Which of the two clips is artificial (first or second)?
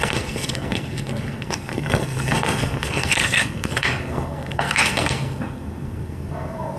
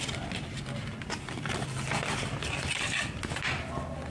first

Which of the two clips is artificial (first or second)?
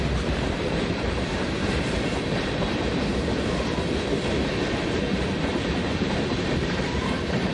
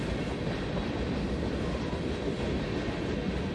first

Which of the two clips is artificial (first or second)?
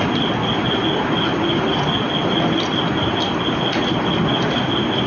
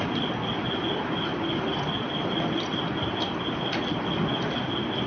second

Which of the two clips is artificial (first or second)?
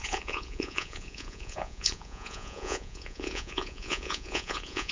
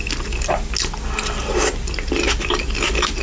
first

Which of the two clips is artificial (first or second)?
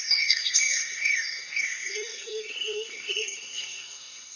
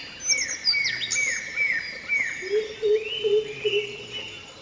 first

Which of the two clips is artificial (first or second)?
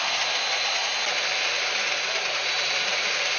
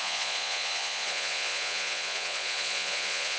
second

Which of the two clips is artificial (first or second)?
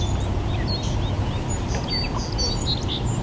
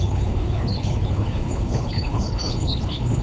second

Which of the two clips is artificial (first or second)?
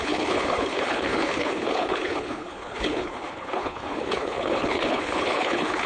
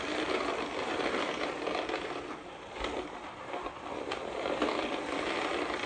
first